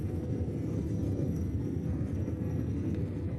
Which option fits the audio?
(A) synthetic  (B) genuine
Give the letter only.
A